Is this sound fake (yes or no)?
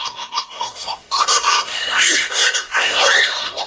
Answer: yes